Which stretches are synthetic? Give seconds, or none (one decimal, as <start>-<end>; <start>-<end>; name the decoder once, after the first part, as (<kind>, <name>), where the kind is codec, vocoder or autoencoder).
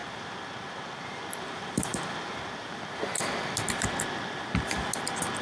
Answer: 0.0-3.2 (vocoder, BigVGAN v2)